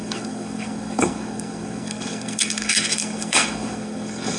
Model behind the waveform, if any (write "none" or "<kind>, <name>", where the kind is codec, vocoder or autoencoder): codec, SNAC